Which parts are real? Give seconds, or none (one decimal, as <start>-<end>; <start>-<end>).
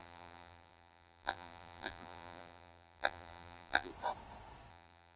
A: 3.9-4.7